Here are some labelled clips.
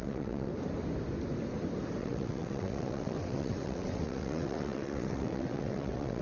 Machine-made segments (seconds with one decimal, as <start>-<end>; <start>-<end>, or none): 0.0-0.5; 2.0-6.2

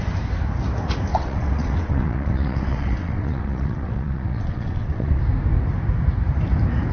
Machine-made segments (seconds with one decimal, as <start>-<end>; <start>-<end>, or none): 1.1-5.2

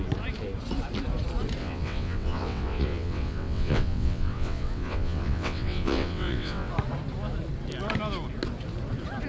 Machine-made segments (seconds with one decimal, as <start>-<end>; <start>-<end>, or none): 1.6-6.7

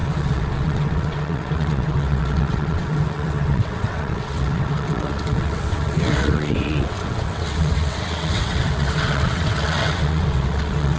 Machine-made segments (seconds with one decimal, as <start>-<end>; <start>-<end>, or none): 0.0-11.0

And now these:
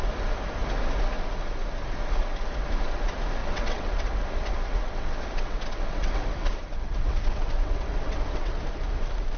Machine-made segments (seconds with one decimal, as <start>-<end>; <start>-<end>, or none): 3.4-8.5

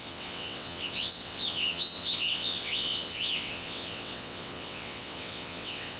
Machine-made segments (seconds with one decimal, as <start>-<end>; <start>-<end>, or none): 0.0-6.0

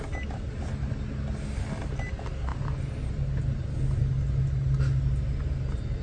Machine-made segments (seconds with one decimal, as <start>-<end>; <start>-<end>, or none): none

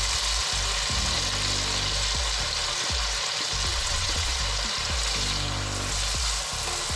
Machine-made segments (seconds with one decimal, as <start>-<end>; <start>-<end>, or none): 3.7-4.4